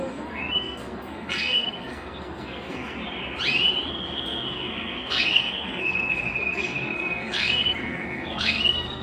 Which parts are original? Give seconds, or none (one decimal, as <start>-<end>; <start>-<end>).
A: 3.0-3.9